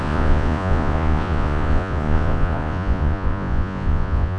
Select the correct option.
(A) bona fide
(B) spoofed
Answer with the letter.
B